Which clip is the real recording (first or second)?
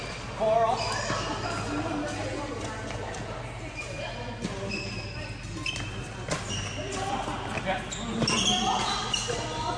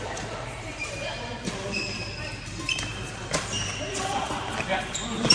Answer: first